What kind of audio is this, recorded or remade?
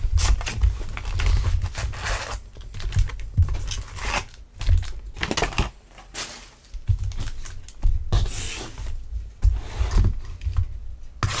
recorded